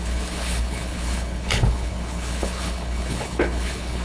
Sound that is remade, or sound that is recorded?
remade